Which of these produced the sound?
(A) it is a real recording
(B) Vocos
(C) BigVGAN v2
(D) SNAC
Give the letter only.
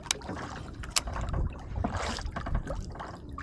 A